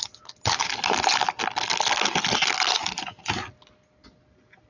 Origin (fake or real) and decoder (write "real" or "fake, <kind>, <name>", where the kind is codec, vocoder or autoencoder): real